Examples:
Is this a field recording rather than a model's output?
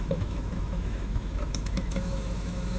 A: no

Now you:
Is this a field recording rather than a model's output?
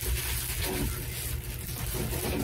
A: yes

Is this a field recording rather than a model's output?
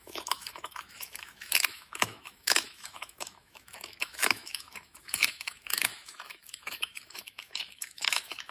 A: no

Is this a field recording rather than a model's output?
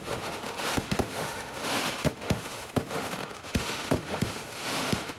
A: no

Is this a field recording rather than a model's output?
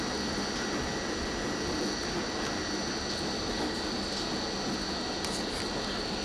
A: yes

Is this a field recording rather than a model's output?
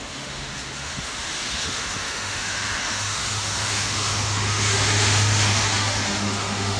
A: no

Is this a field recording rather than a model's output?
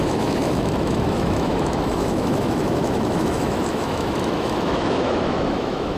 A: no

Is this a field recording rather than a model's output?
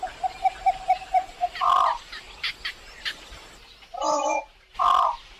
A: yes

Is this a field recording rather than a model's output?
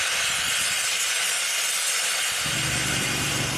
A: yes